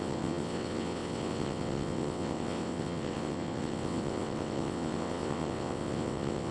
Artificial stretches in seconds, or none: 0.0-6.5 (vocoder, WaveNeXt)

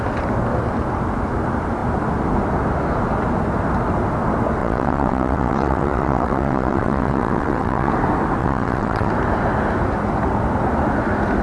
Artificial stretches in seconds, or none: 4.6-7.9 (vocoder, WaveNeXt); 8.4-9.1

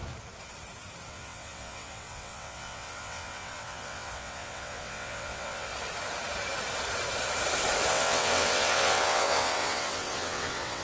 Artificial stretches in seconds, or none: 1.1-5.7 (vocoder, WaveNeXt); 7.9-10.8

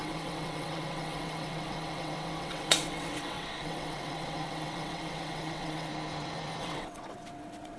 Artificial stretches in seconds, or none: 0.0-5.9 (vocoder, WaveNeXt); 6.6-7.8

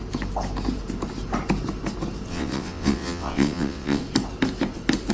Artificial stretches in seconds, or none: 2.3-4.0 (vocoder, WaveNeXt)

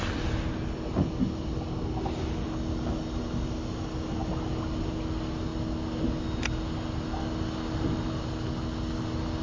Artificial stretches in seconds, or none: none

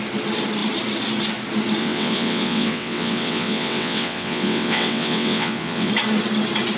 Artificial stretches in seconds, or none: 1.8-5.9 (vocoder, WaveNeXt)